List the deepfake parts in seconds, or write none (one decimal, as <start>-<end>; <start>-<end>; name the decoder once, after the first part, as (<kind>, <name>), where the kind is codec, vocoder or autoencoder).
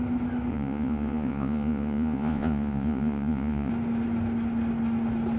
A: 0.5-3.7 (vocoder, Vocos)